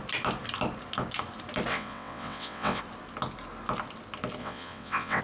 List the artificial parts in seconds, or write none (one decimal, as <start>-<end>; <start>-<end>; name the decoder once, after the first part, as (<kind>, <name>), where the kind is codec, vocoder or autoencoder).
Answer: 1.7-2.8 (vocoder, WaveNeXt); 4.4-5.2